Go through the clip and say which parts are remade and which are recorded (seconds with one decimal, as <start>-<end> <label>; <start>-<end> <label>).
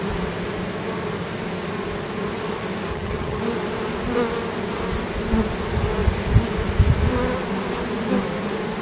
0.0-2.9 recorded; 2.9-3.4 remade; 3.4-8.8 recorded